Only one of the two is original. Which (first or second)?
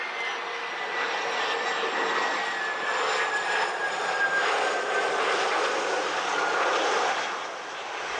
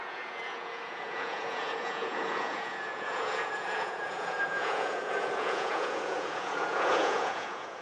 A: first